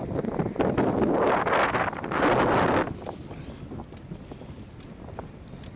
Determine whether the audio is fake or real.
real